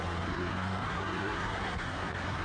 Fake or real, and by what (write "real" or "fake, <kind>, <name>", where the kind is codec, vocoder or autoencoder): fake, codec, SNAC